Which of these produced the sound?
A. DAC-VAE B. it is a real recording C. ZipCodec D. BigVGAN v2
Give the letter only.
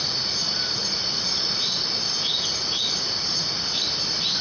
B